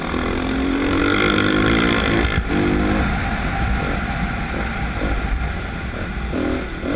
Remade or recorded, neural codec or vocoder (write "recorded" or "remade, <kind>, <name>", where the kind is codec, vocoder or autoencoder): recorded